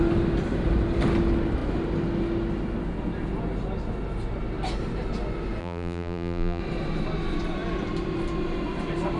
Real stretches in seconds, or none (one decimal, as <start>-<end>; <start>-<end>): 0.0-5.6; 6.6-9.2